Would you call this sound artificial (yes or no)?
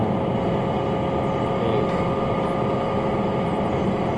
no